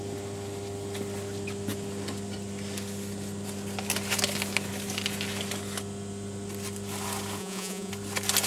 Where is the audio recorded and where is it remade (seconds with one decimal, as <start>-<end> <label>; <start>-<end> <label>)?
0.0-7.4 recorded; 7.4-7.9 remade; 7.9-8.5 recorded